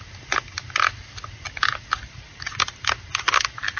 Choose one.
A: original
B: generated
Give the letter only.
A